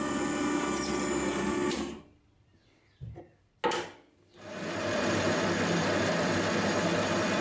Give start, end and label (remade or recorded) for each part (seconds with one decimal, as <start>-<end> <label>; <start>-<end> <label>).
0.0-7.4 recorded